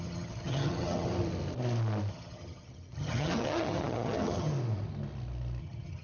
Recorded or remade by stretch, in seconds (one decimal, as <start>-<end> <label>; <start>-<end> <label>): 0.0-1.1 remade; 1.1-2.1 recorded; 2.1-4.5 remade; 4.5-5.6 recorded; 5.6-6.0 remade